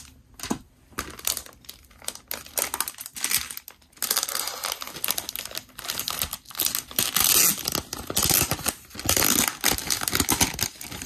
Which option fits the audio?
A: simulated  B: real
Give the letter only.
B